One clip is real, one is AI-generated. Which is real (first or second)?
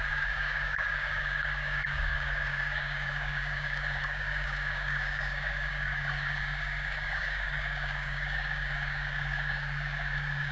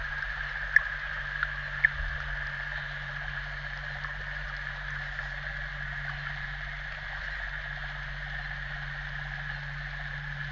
second